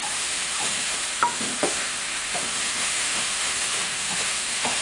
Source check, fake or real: fake